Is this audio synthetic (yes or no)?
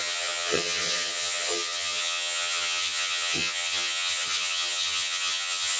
yes